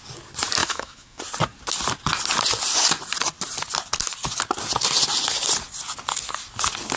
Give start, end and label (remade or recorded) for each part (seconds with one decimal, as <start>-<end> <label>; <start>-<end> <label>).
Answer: 0.0-0.6 recorded; 0.6-1.2 remade; 1.2-7.0 recorded